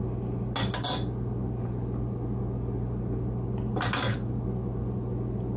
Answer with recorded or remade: recorded